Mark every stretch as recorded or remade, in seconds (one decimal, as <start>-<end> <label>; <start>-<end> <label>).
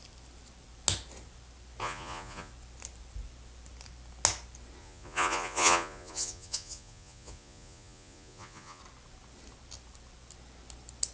0.0-1.8 recorded; 1.8-2.5 remade; 2.5-4.8 recorded; 4.8-8.8 remade; 8.8-11.1 recorded